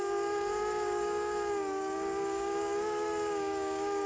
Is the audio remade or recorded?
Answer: remade